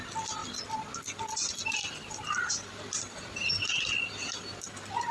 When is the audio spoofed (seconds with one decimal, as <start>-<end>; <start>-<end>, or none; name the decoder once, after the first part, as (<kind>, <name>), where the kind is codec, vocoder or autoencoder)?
none